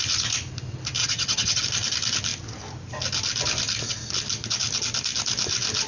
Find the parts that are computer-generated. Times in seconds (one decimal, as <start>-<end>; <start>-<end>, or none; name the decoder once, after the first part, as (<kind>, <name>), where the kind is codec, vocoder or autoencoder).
1.0-1.6 (vocoder, HiFi-GAN)